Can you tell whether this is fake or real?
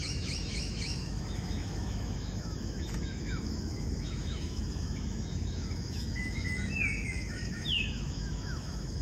fake